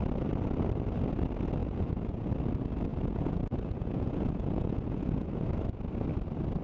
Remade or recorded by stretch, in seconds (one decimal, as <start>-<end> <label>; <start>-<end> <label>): 0.0-1.6 recorded; 1.6-2.3 remade; 2.3-2.9 recorded; 2.9-5.5 remade; 5.5-6.6 recorded